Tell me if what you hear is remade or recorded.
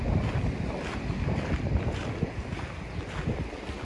recorded